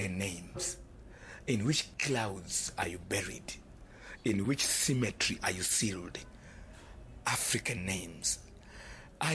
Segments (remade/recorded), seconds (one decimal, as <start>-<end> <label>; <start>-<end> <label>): 0.0-1.1 recorded; 1.1-2.0 remade; 2.0-3.2 recorded; 3.2-9.3 remade